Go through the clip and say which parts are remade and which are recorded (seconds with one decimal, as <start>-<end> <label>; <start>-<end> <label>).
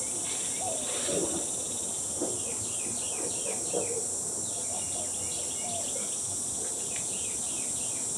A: 0.0-1.2 recorded; 1.2-5.5 remade; 5.5-8.2 recorded